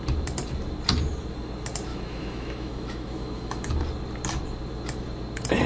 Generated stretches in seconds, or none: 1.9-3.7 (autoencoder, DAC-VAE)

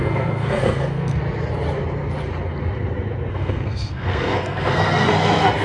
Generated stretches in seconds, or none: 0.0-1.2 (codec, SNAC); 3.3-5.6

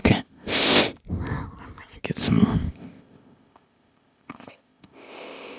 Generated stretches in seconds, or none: 0.0-0.8 (codec, ZipCodec); 2.2-5.6

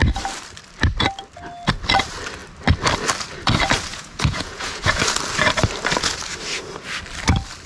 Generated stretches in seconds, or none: 3.9-5.0 (vocoder, Vocos)

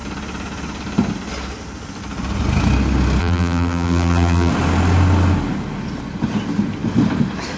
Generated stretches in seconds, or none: 3.2-4.5 (vocoder, BigVGAN v2)